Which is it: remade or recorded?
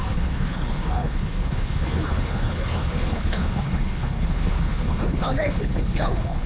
remade